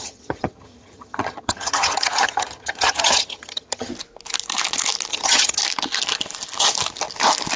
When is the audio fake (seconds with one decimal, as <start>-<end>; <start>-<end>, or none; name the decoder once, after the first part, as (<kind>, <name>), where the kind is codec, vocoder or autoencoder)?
0.0-3.9 (vocoder, HiFi-GAN); 5.1-5.6